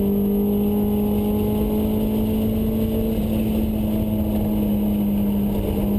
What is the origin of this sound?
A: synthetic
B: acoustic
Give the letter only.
B